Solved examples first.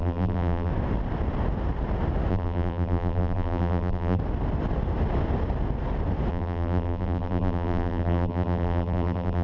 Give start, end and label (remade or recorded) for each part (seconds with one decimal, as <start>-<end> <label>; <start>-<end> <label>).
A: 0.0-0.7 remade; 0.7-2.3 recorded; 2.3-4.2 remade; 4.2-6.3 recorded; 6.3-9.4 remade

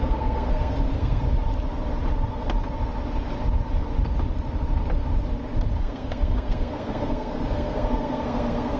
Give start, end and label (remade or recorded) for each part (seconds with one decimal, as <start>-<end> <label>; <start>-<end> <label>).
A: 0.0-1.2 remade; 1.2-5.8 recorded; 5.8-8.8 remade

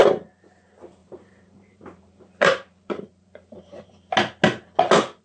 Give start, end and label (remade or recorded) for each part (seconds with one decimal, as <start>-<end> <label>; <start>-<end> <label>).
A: 0.0-0.5 remade; 0.5-1.0 recorded; 1.0-4.1 remade; 4.1-5.2 recorded